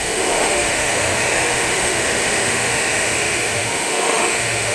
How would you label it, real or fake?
fake